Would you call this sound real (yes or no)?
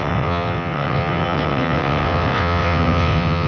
no